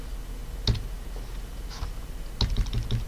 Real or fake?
real